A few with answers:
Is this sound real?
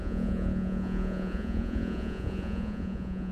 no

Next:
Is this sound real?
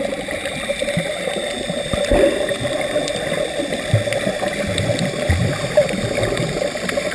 yes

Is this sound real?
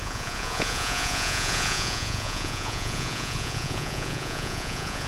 no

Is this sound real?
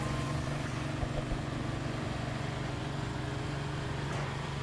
no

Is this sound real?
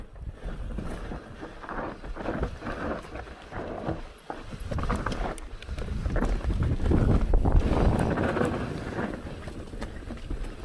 yes